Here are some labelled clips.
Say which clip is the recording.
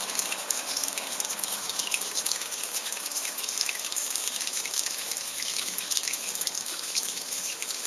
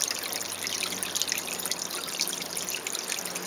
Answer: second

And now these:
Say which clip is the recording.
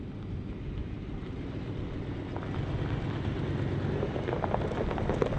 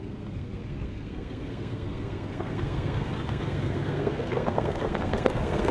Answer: first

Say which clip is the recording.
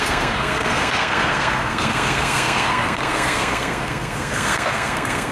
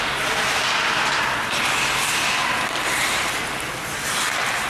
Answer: second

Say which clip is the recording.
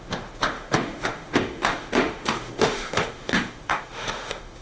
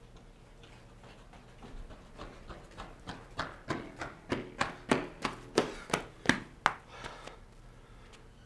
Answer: second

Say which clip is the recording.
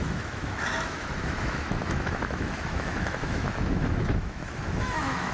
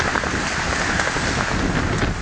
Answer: second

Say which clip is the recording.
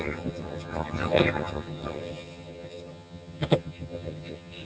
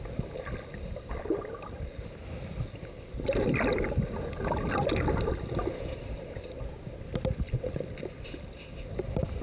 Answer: second